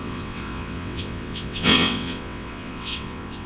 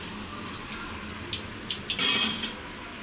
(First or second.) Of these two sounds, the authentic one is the second